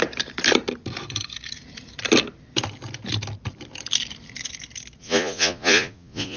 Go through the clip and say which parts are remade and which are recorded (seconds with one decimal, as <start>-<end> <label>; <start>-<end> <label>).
0.0-5.0 recorded; 5.0-6.4 remade